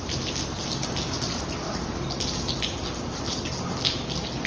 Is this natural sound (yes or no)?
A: yes